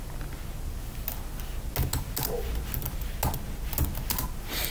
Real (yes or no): yes